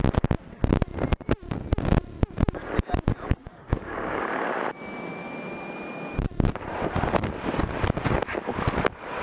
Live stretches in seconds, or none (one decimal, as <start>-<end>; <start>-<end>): 0.0-3.4; 4.2-9.2